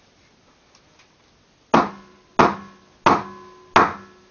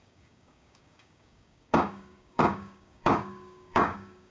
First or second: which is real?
first